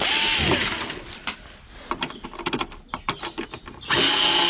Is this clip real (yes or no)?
yes